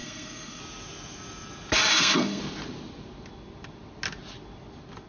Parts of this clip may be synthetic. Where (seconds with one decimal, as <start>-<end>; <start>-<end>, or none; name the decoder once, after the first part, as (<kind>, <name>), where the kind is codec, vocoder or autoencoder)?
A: 0.0-0.6 (codec, SNAC); 1.9-2.4